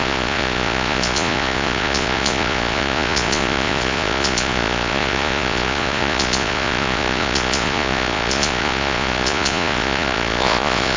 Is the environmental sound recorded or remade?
remade